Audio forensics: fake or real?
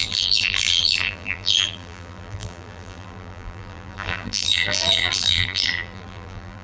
fake